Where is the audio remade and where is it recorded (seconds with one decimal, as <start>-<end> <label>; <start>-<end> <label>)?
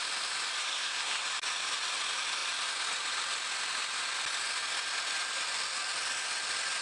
0.0-0.6 recorded; 0.6-1.2 remade; 1.2-6.8 recorded